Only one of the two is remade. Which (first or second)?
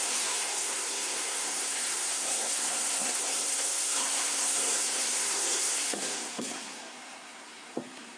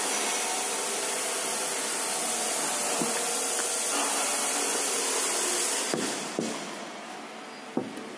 first